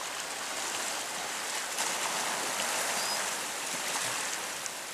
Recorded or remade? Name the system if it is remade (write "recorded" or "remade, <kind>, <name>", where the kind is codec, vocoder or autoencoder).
recorded